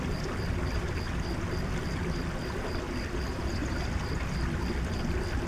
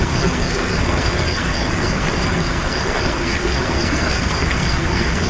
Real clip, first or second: first